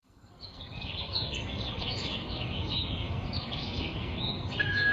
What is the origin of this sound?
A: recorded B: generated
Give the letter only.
B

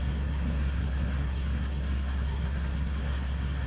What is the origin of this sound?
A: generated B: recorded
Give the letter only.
A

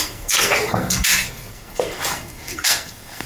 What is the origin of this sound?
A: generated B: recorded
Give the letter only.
A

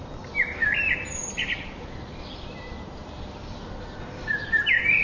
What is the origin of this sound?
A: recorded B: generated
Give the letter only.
A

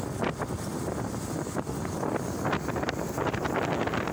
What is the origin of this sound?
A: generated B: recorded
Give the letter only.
B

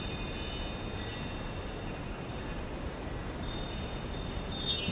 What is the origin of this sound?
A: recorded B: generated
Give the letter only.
A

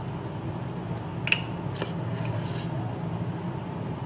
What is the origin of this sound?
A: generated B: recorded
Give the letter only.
B